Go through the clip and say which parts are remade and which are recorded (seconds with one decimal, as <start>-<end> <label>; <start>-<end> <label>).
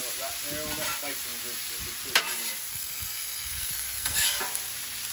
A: 0.0-2.7 recorded; 2.7-4.4 remade; 4.4-5.1 recorded